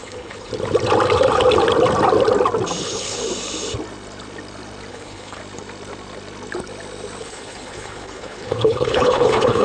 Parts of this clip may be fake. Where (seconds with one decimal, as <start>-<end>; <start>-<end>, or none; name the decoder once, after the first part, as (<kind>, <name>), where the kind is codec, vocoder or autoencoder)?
0.0-0.5 (codec, HILCodec); 2.8-3.2; 4.9-5.4; 7.2-9.6